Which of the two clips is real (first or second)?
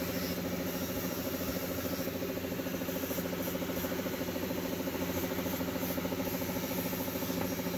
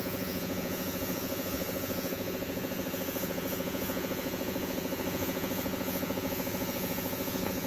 first